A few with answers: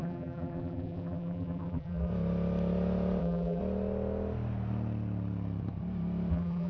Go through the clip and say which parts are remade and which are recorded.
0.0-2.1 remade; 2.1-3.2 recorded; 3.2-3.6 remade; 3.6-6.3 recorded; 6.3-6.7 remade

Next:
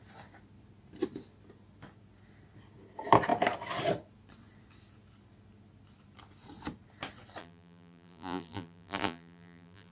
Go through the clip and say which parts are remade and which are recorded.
0.0-7.4 recorded; 7.4-9.9 remade

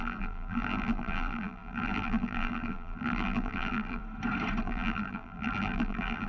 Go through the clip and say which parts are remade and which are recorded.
0.0-4.0 remade; 4.0-4.6 recorded; 4.6-6.3 remade